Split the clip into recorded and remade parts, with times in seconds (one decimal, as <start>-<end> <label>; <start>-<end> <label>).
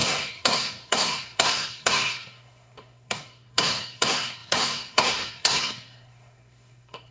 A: 0.0-7.1 remade